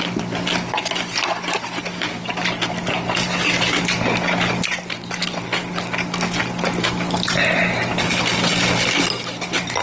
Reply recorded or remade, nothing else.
recorded